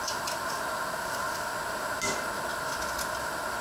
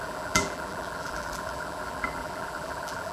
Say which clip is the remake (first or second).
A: second